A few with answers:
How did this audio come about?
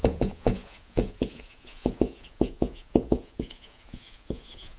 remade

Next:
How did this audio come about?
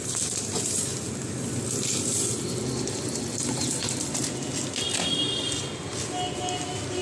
recorded